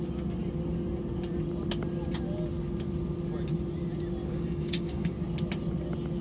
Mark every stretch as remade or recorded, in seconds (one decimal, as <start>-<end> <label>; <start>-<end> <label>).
0.0-4.3 recorded; 4.3-5.1 remade; 5.1-6.2 recorded